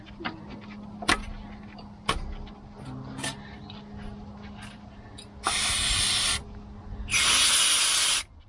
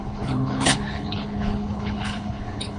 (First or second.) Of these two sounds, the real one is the first